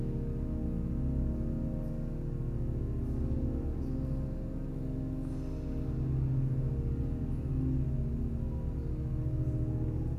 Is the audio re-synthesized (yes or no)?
no